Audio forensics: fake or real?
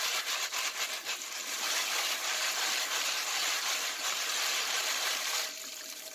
fake